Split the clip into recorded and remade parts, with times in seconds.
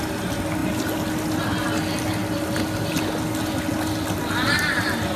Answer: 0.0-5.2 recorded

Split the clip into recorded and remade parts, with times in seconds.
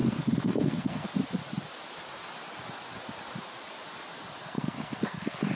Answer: 0.0-1.1 remade; 1.1-4.4 recorded; 4.4-5.6 remade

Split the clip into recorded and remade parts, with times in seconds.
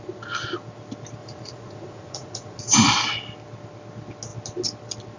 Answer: 0.0-1.2 recorded; 1.2-2.6 remade; 2.6-5.2 recorded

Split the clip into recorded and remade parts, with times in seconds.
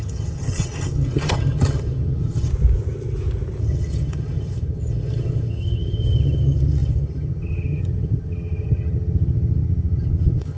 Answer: 0.0-2.5 remade; 2.5-3.6 recorded; 3.6-10.6 remade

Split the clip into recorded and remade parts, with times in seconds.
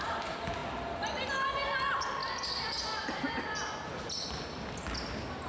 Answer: 0.0-5.5 recorded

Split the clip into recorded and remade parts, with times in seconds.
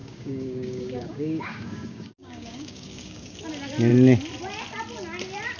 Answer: 0.0-3.4 remade; 3.4-5.6 recorded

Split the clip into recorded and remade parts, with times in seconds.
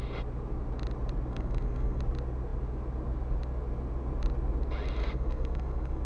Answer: 0.0-1.3 recorded; 1.3-2.0 remade; 2.0-5.0 recorded; 5.0-6.0 remade